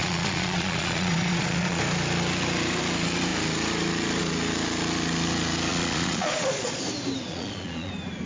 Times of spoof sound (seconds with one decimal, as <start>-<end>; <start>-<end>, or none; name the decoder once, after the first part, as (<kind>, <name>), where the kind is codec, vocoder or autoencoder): 0.0-1.8 (vocoder, Vocos); 5.7-6.8; 7.3-7.9